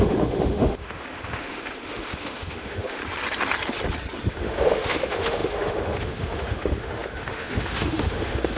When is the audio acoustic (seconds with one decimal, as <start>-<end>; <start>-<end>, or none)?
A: 3.0-4.3